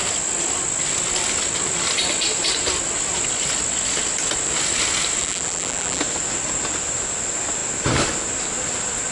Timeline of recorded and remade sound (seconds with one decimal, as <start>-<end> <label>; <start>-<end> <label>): 0.0-5.2 recorded; 5.2-6.0 remade; 6.0-9.1 recorded